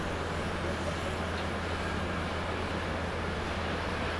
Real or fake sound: real